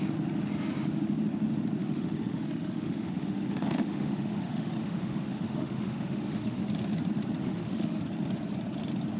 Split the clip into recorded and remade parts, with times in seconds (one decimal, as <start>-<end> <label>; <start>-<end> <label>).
0.0-1.8 recorded; 1.8-6.6 remade; 6.6-7.4 recorded; 7.4-8.0 remade; 8.0-9.2 recorded